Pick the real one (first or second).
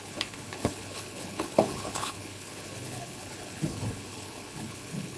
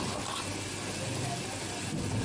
second